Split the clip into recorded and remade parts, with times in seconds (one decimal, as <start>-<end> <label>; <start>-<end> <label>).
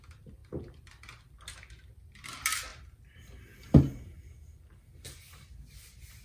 0.0-6.2 recorded